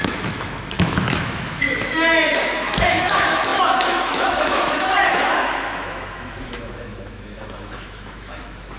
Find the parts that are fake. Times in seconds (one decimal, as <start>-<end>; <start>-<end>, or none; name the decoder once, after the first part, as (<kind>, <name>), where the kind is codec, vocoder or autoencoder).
0.0-8.8 (autoencoder, DAC-VAE)